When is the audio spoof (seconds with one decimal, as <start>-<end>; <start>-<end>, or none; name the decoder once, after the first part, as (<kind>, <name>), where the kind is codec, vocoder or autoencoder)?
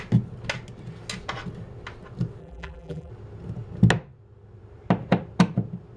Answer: 2.4-3.1 (vocoder, BigVGAN v2)